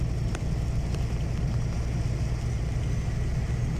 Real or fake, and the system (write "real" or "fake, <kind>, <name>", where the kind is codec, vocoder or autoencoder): real